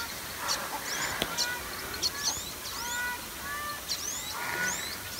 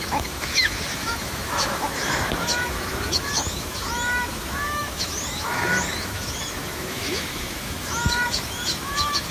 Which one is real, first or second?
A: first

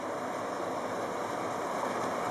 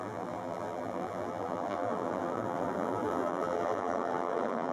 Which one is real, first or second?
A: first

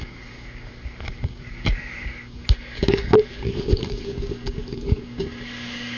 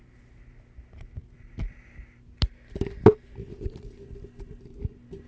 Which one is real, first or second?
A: second